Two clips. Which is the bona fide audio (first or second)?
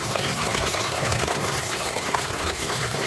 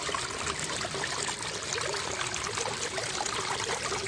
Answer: second